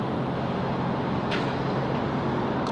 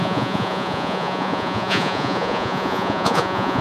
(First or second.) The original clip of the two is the first